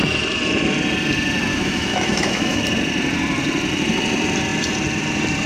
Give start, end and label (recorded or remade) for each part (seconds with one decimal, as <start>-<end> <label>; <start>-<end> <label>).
0.0-1.5 recorded; 1.5-2.6 remade; 2.6-5.5 recorded